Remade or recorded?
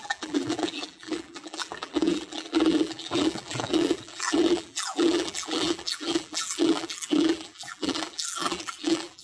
remade